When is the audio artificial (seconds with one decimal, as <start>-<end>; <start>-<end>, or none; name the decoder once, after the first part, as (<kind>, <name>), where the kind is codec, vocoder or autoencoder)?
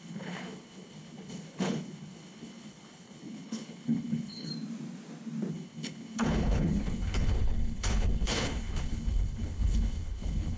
0.0-4.5 (codec, HILCodec); 5.5-10.6